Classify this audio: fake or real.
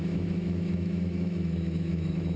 fake